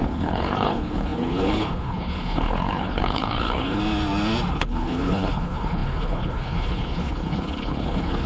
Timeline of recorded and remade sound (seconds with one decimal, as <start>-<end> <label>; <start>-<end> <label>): 0.0-3.8 remade; 3.8-4.5 recorded; 4.5-8.3 remade